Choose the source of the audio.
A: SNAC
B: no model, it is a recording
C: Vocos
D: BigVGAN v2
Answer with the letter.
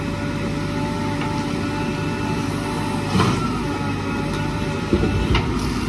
B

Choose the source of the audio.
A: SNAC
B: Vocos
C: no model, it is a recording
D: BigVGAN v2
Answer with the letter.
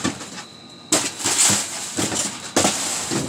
C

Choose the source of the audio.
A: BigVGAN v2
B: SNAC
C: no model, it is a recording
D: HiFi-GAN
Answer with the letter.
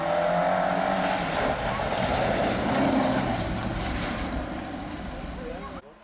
C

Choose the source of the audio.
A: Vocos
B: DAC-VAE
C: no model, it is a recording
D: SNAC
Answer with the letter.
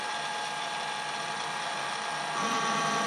C